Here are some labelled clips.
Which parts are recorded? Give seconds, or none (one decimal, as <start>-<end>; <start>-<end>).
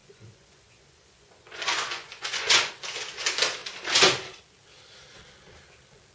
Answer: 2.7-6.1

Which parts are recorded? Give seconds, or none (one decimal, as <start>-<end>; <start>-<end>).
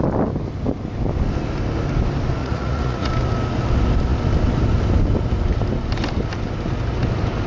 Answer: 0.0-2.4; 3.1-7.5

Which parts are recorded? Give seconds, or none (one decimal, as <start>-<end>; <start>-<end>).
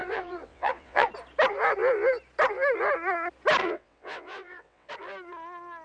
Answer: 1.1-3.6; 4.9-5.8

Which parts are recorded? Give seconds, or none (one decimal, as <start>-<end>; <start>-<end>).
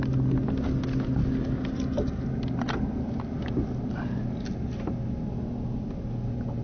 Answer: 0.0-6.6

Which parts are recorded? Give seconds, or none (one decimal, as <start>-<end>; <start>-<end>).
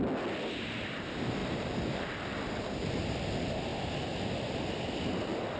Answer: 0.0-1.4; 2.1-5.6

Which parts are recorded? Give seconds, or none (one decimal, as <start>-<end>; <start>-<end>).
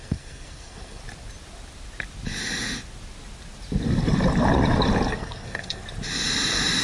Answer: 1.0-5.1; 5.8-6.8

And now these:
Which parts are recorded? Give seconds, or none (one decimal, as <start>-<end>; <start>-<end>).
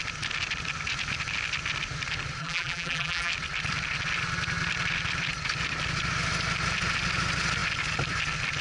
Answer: 0.0-2.4; 3.3-8.6